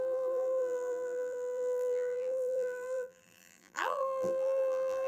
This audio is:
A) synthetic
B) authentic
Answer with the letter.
A